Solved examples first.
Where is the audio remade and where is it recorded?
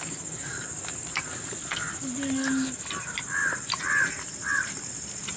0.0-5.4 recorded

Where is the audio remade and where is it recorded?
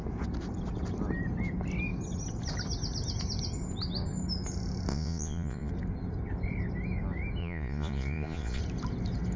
0.0-4.9 recorded; 4.9-5.7 remade; 5.7-7.4 recorded; 7.4-8.6 remade; 8.6-9.4 recorded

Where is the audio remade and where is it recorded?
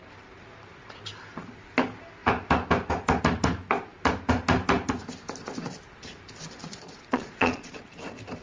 0.0-6.6 recorded; 6.6-7.8 remade; 7.8-8.4 recorded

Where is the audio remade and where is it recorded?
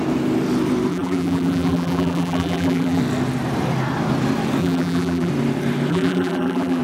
0.0-0.9 recorded; 0.9-3.0 remade; 3.0-4.6 recorded; 4.6-5.3 remade; 5.3-5.9 recorded; 5.9-6.8 remade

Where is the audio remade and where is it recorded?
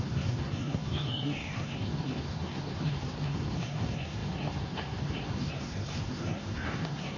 0.0-7.2 remade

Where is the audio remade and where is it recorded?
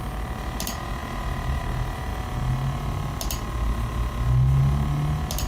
0.0-5.5 recorded